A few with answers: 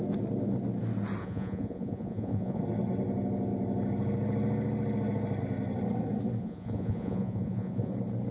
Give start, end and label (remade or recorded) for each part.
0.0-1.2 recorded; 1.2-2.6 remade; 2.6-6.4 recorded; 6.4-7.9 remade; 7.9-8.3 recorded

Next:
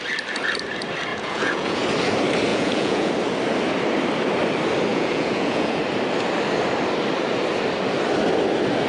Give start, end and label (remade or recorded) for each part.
0.0-1.1 recorded; 1.1-1.8 remade; 1.8-2.5 recorded; 2.5-3.1 remade; 3.1-4.9 recorded; 4.9-5.8 remade; 5.8-8.9 recorded

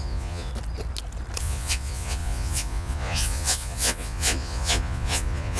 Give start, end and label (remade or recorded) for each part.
0.0-0.5 remade; 0.5-1.4 recorded; 1.4-5.6 remade